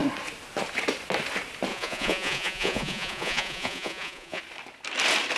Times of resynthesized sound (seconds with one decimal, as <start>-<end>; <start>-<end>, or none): 1.7-4.4